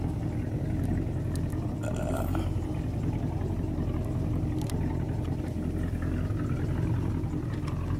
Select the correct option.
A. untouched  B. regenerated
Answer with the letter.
A